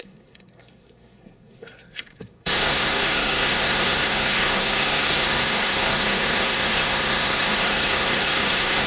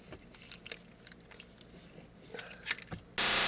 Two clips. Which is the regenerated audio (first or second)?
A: first